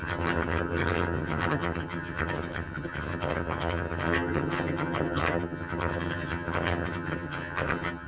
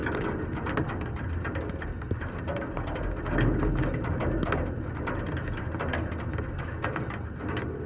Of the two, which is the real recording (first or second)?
second